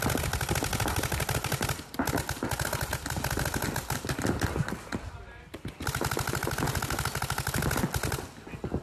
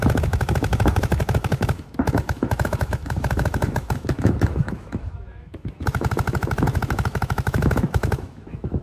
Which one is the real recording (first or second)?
first